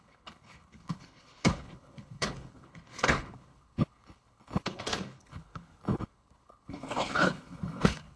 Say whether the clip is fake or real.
fake